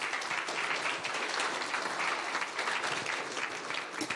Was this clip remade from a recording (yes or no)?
no